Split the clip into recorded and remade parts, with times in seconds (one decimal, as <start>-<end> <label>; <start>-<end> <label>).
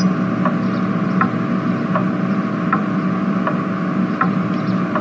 0.0-5.0 recorded